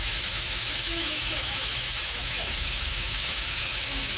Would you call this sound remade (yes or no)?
yes